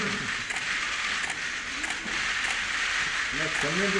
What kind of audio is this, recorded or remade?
recorded